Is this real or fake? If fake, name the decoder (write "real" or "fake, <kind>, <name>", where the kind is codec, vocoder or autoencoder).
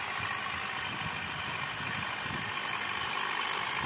real